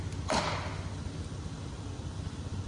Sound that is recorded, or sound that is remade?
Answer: recorded